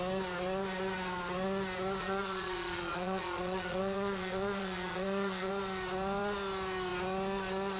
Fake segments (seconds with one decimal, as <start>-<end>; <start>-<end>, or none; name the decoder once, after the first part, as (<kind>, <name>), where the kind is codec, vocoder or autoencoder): 2.0-5.5 (vocoder, Vocos)